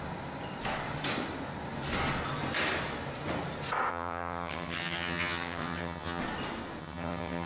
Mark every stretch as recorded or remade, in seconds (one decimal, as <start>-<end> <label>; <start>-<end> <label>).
0.0-3.9 recorded; 3.9-6.2 remade; 6.2-6.8 recorded; 6.8-7.5 remade